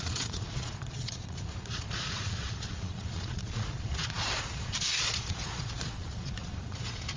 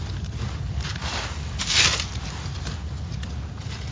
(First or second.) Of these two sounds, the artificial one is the first